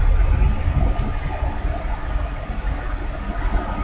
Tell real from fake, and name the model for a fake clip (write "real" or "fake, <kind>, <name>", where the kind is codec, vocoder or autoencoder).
real